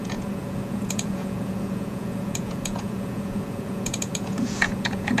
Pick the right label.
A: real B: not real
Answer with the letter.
B